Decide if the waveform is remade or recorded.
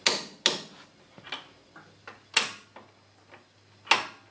recorded